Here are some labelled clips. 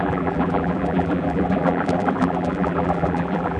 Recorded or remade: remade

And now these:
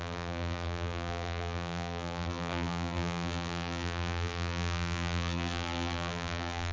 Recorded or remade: remade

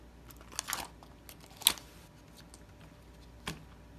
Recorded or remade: recorded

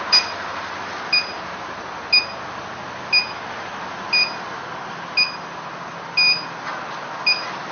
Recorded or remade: recorded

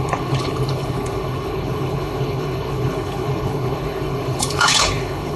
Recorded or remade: remade